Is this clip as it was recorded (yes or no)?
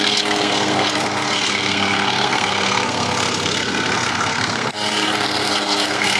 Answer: no